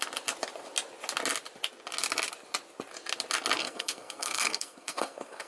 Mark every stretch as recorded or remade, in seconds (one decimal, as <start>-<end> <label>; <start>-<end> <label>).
0.0-3.6 recorded; 3.6-5.5 remade